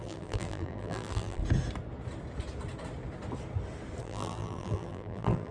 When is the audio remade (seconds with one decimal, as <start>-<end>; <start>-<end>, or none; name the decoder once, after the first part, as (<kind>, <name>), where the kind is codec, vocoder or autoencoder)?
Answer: 0.0-1.4 (vocoder, BigVGAN v2); 4.0-5.5